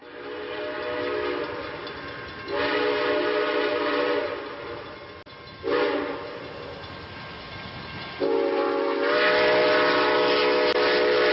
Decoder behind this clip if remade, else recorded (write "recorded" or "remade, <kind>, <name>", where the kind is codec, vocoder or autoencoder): recorded